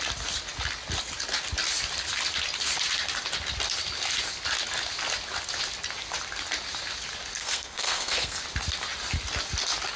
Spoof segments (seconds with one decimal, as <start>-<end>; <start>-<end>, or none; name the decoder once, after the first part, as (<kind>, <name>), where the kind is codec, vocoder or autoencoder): 7.4-8.4 (codec, SNAC)